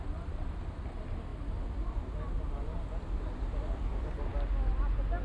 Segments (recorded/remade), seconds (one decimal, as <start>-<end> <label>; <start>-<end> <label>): 0.0-5.2 recorded